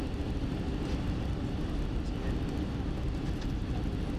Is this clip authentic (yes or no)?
yes